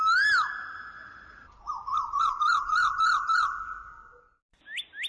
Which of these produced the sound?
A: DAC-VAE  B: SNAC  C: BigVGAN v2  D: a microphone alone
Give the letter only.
D